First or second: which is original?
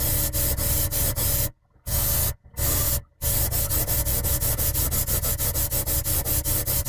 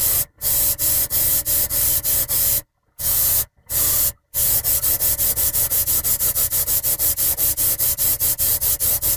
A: first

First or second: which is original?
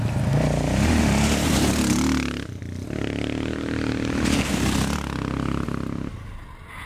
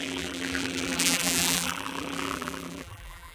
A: first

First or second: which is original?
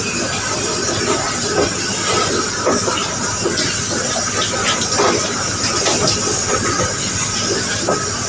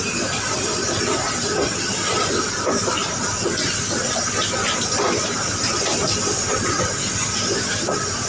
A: first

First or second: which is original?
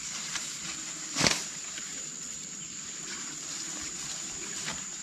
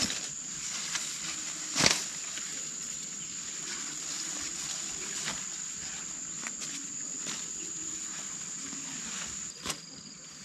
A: second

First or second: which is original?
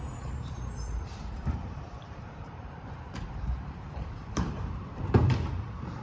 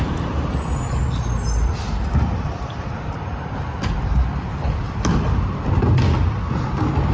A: second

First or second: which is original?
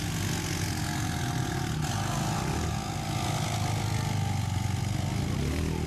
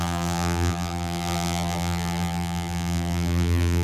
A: first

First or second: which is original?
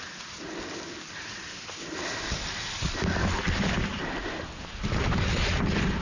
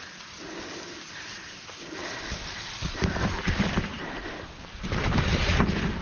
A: first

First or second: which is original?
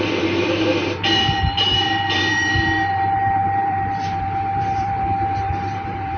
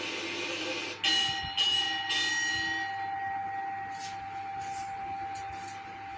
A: second